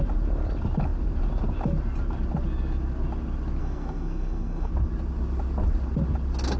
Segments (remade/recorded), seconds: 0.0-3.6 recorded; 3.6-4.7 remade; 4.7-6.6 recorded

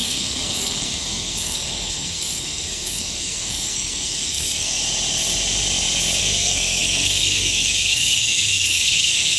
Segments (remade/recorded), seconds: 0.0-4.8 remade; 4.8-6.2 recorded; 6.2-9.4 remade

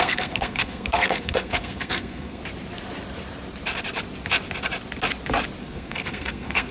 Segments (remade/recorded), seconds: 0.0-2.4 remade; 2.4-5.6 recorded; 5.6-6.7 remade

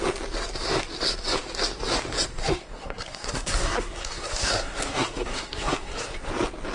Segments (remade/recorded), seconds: 0.0-2.4 recorded; 2.4-6.3 remade; 6.3-6.7 recorded

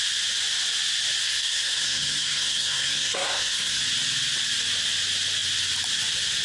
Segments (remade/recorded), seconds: 0.0-1.2 recorded; 1.2-3.8 remade; 3.8-6.4 recorded

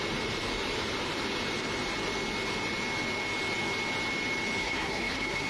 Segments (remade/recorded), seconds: 0.0-4.6 recorded; 4.6-5.5 remade

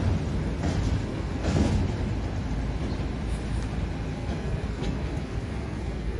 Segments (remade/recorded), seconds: 0.0-1.1 recorded; 1.1-1.7 remade; 1.7-4.1 recorded; 4.1-6.2 remade

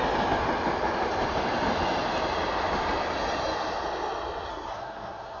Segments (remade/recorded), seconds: 0.0-4.5 recorded; 4.5-5.4 remade